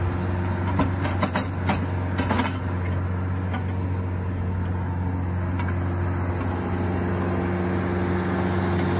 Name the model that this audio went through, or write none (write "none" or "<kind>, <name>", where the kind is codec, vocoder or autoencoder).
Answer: none